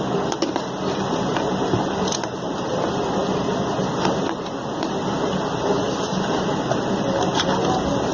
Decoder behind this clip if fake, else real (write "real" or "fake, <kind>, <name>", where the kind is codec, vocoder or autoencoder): real